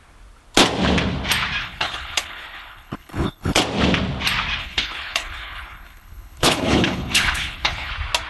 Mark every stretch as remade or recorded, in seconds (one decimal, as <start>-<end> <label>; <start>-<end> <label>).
0.0-1.6 recorded; 1.6-3.6 remade; 3.6-4.6 recorded; 4.6-7.9 remade; 7.9-8.3 recorded